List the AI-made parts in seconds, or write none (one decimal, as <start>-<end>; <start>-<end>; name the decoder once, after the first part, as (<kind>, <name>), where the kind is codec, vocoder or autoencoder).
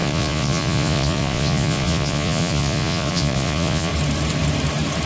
0.0-3.9 (vocoder, Vocos)